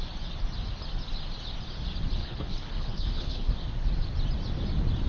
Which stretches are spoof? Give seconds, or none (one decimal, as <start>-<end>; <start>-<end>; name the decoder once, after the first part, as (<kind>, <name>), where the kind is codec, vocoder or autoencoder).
2.2-3.5 (codec, HILCodec)